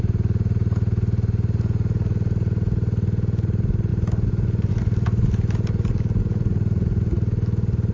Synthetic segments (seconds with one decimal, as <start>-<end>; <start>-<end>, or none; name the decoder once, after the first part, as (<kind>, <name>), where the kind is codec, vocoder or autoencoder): none